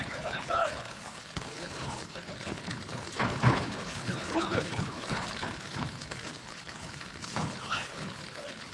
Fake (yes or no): yes